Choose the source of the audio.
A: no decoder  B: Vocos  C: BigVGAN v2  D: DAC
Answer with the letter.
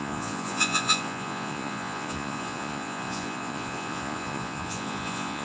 B